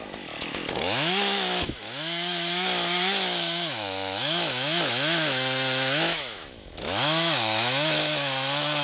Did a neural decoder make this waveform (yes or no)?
yes